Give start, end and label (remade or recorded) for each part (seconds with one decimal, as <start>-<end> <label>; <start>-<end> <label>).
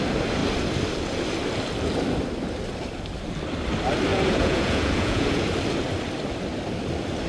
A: 0.0-4.1 recorded; 4.1-5.4 remade; 5.4-7.3 recorded